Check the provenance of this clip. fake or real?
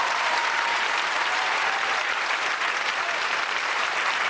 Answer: fake